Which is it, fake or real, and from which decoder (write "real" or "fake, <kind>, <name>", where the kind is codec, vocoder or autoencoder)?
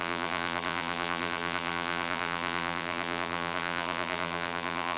fake, vocoder, BigVGAN v2